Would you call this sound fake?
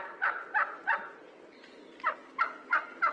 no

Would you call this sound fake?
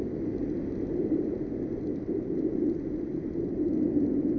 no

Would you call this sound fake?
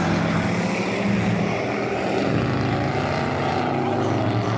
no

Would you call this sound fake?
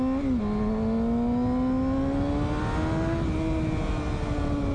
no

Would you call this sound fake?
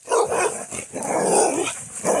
no